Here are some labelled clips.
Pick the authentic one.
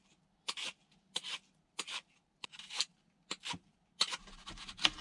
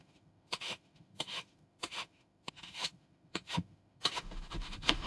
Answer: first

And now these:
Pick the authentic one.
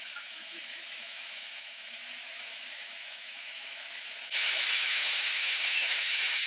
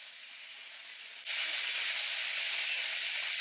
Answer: second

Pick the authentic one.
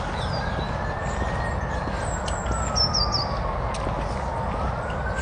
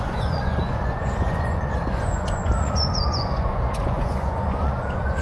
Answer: first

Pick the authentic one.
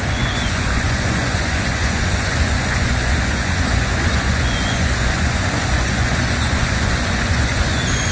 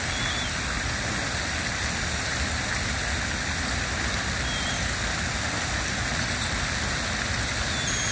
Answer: second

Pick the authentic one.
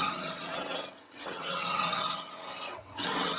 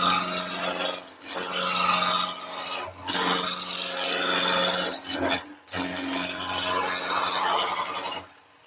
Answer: second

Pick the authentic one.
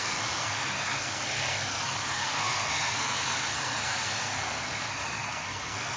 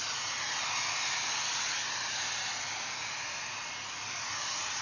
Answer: second